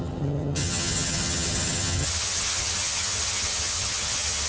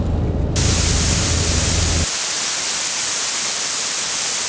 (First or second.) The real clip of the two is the second